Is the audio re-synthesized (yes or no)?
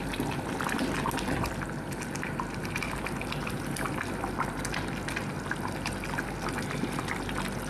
no